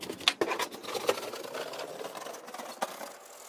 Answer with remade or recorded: recorded